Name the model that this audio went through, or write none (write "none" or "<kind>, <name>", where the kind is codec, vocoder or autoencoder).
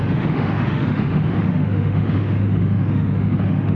autoencoder, DAC-VAE